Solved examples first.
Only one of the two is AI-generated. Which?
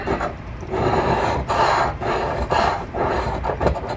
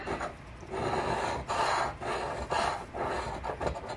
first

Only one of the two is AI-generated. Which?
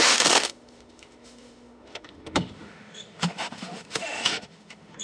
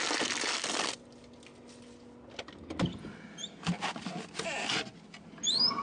first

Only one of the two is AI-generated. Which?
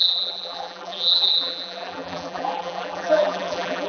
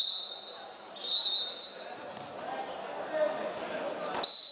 first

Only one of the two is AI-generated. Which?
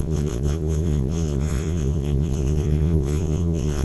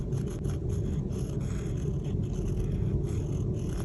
first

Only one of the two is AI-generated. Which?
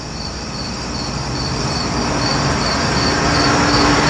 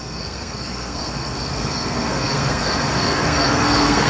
second